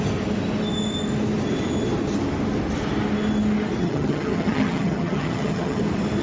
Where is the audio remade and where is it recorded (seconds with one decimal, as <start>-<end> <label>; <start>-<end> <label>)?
0.0-3.8 recorded; 3.8-5.8 remade; 5.8-6.2 recorded